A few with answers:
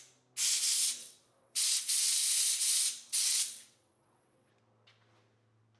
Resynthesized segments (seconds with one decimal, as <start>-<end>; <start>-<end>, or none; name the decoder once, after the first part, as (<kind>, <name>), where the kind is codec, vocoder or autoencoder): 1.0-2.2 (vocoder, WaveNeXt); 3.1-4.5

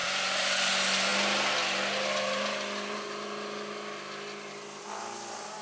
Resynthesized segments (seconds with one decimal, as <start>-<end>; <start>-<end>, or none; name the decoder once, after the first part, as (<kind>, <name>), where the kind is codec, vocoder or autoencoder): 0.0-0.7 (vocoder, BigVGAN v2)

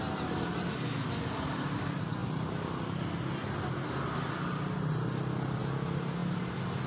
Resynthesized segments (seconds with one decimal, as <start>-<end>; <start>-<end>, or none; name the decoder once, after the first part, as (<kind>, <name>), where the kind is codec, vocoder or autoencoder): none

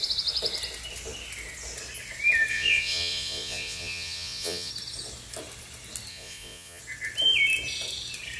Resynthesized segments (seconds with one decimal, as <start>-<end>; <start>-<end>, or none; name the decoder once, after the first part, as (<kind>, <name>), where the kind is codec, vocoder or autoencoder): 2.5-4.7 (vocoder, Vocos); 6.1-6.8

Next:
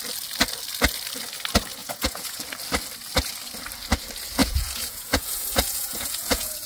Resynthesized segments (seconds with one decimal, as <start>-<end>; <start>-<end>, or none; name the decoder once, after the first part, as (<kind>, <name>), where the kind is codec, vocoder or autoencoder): 1.8-2.4 (vocoder, Vocos); 4.4-6.7

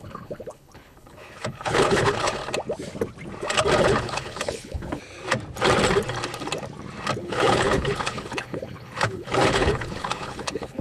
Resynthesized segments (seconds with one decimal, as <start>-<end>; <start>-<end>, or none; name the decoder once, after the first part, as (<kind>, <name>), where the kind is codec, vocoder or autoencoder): 0.0-2.4 (codec, HILCodec); 3.8-5.0; 7.2-10.8

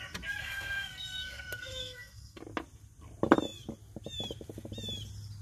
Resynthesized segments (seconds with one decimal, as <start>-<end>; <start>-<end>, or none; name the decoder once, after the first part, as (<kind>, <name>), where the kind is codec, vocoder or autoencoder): 0.4-2.4 (codec, SNAC)